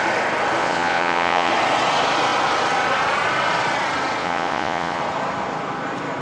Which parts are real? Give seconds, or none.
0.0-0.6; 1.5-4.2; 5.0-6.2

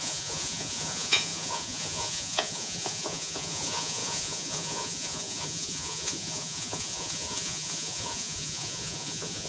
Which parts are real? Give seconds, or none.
none